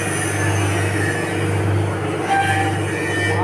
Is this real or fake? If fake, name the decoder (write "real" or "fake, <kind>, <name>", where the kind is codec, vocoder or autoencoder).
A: real